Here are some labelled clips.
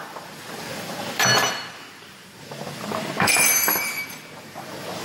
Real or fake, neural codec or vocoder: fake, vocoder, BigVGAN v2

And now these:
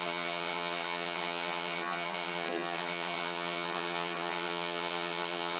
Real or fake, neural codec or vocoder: fake, vocoder, HiFi-GAN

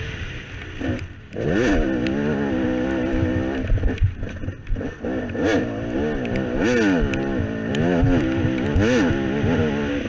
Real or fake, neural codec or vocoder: real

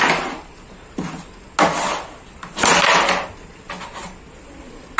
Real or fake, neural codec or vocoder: real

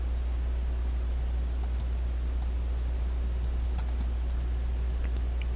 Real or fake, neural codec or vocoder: real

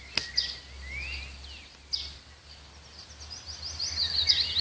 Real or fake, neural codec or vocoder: real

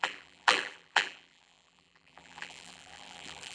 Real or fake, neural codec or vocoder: fake, vocoder, BigVGAN v2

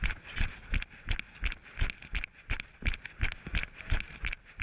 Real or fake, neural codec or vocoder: real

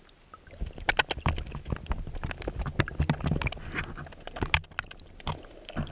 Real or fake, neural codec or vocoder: real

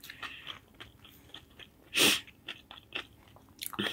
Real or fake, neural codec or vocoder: real